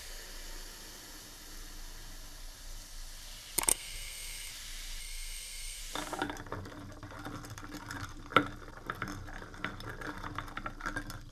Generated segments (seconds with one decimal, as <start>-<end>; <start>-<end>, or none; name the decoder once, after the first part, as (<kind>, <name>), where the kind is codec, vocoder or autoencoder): 3.7-4.5 (codec, SNAC); 5.0-5.8